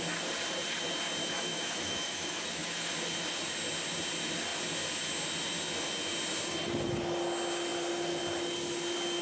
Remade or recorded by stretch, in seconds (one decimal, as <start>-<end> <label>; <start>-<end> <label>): 0.0-1.2 recorded; 1.2-2.9 remade; 2.9-9.2 recorded

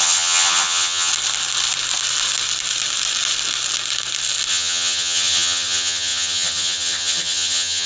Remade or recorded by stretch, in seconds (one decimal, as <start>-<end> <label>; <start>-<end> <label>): 0.0-1.1 remade; 1.1-4.5 recorded; 4.5-7.9 remade